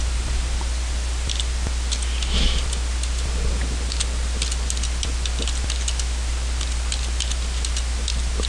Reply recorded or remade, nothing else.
recorded